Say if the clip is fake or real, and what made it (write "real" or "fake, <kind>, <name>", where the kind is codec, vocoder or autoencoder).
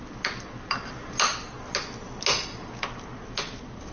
real